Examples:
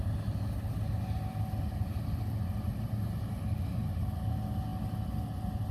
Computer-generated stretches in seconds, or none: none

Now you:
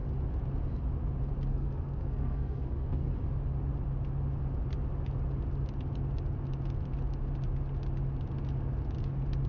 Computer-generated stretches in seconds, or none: 1.5-3.1

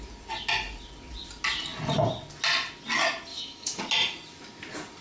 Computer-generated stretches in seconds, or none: 3.3-3.8

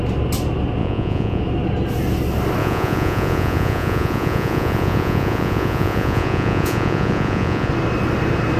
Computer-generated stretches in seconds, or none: 0.8-1.4; 2.6-7.7